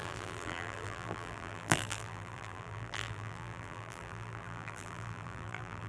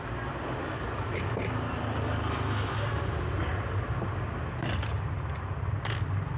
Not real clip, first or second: first